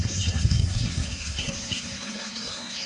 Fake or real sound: fake